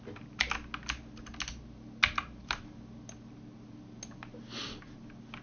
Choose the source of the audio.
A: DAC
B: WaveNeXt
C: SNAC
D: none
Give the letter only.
D